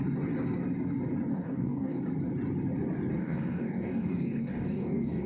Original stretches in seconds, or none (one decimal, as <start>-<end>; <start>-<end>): 0.0-1.3; 2.0-3.2